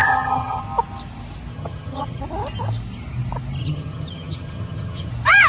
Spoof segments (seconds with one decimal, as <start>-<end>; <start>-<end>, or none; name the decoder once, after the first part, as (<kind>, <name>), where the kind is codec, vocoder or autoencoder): 0.0-0.6 (vocoder, HiFi-GAN); 1.5-2.2; 3.6-5.1